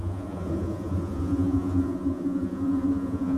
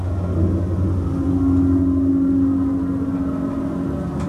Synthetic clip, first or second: first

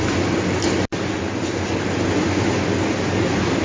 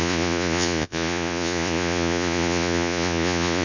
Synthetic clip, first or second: second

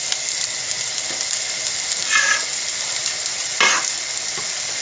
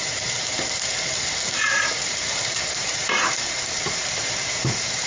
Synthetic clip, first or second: second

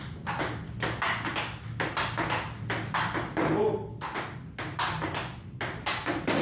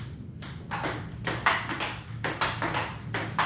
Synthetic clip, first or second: second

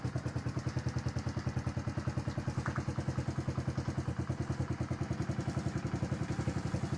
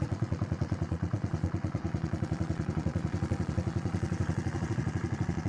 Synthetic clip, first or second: second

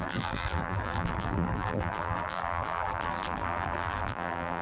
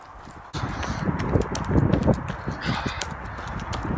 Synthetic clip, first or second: first